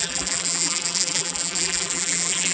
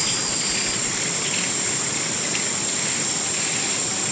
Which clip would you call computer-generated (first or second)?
first